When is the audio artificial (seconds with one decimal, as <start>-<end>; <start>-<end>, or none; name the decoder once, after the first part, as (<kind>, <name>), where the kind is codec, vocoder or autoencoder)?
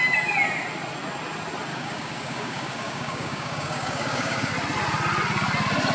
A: 1.7-4.5 (codec, DAC)